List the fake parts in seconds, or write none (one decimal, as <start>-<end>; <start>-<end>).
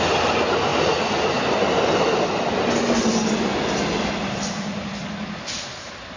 none